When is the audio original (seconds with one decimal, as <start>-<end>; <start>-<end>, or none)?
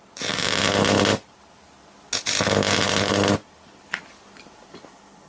0.0-5.3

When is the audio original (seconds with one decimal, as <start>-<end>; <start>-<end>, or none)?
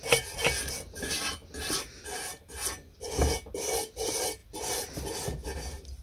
0.0-6.0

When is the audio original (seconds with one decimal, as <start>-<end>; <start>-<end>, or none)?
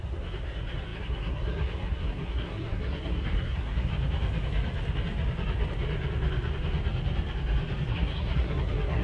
3.9-7.9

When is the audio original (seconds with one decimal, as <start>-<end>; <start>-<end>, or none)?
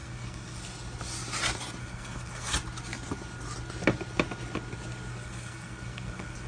0.6-1.8; 2.5-5.1